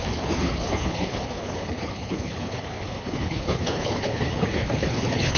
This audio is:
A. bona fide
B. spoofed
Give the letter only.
B